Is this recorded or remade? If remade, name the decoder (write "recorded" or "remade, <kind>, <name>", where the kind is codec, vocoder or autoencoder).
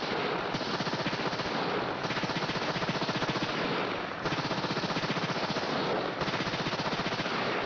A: recorded